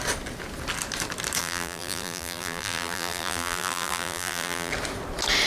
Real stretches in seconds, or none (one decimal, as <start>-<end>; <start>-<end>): 0.0-1.4; 4.7-5.5